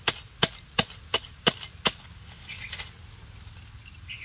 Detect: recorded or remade recorded